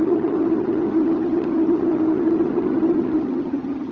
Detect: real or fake fake